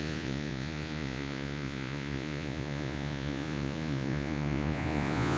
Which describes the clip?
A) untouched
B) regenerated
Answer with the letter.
B